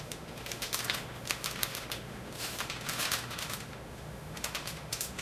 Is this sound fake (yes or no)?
yes